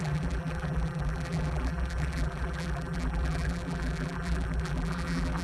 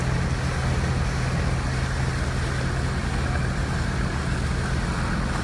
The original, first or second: second